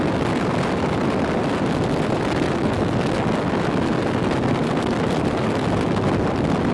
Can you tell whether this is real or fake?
real